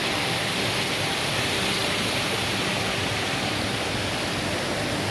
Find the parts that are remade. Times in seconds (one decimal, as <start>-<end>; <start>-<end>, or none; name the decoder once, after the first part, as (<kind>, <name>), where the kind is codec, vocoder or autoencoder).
1.8-3.7 (vocoder, BigVGAN v2)

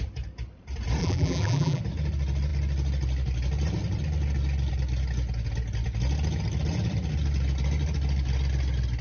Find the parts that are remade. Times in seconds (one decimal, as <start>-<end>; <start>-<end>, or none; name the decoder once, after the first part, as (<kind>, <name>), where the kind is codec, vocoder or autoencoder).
1.0-1.8 (vocoder, BigVGAN v2)

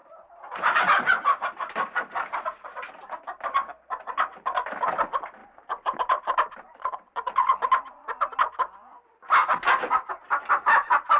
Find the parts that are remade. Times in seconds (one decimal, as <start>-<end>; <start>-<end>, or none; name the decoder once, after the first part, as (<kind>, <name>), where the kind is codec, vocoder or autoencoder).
0.0-0.8 (vocoder, BigVGAN v2); 5.4-8.3

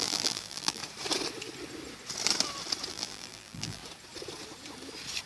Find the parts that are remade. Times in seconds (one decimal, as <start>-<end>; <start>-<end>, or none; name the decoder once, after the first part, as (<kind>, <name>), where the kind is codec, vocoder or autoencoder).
0.0-0.8 (vocoder, BigVGAN v2); 2.9-3.8

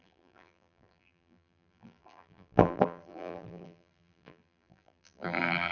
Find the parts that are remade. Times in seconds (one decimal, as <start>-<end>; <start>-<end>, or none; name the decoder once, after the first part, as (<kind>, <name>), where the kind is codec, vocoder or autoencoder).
0.0-5.7 (vocoder, BigVGAN v2)

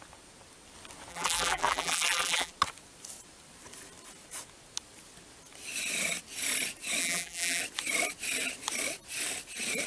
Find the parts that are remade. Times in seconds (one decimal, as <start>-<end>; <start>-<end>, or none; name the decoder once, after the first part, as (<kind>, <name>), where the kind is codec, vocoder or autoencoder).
1.1-2.5 (vocoder, BigVGAN v2); 7.0-7.6

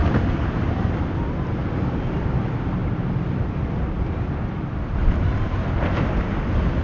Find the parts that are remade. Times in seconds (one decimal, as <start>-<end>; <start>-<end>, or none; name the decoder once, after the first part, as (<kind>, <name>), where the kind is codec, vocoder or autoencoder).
0.6-1.6 (vocoder, BigVGAN v2); 2.1-2.8; 3.6-5.0

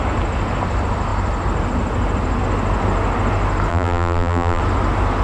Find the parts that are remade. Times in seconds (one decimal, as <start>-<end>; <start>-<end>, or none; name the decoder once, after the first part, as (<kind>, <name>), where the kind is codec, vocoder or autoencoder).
3.7-4.6 (vocoder, BigVGAN v2)